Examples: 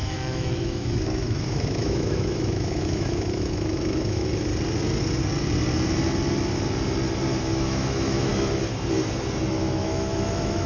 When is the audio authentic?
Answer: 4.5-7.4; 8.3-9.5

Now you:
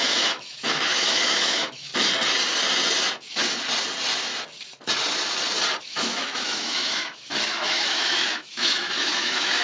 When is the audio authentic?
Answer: 1.9-5.8

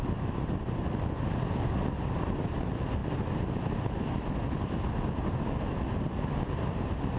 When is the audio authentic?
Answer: 0.0-7.2

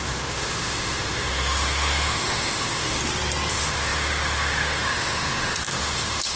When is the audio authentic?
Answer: 3.0-3.5

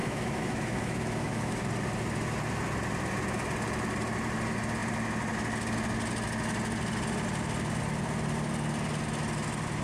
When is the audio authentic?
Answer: 1.6-9.8

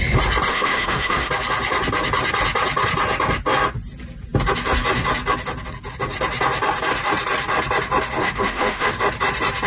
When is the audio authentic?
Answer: 0.0-0.5; 1.3-8.2; 8.9-9.7